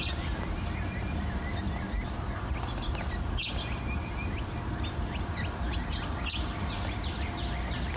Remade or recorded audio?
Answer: recorded